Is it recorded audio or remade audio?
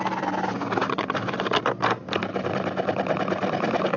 recorded